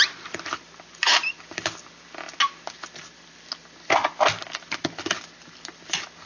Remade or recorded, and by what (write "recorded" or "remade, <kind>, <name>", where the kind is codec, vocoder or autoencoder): recorded